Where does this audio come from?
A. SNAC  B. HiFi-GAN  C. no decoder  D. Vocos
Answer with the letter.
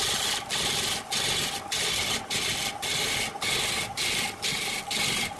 C